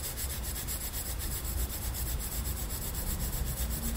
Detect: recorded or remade remade